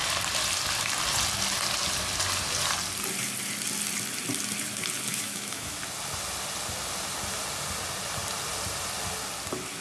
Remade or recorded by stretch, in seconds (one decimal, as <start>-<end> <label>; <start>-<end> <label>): 0.0-5.1 recorded; 5.1-5.8 remade; 5.8-9.8 recorded